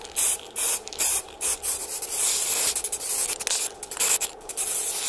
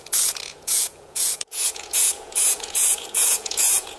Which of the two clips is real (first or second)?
first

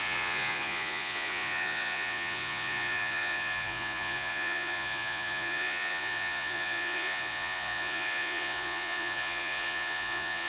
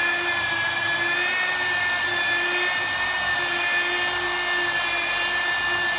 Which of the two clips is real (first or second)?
second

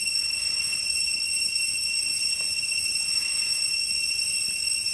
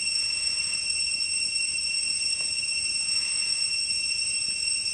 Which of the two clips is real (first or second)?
first